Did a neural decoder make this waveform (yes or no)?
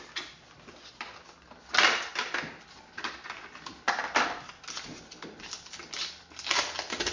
no